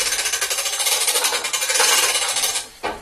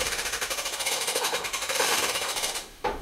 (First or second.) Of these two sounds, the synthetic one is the second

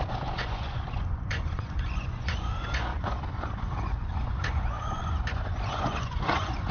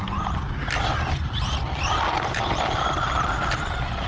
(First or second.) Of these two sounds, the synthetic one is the first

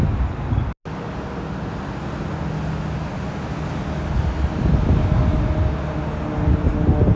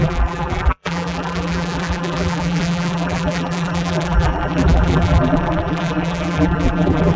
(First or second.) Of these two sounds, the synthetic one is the second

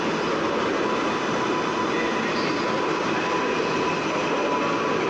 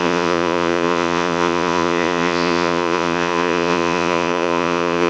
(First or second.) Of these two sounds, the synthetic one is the second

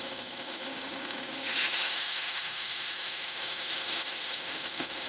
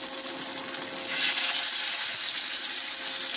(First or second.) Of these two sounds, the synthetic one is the first